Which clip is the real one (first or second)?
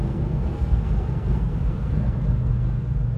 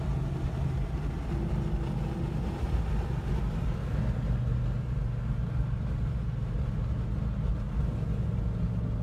second